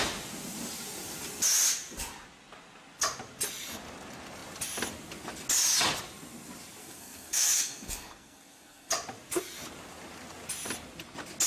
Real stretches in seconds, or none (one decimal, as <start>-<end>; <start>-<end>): 0.0-6.8; 8.9-11.5